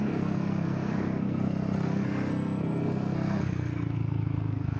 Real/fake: fake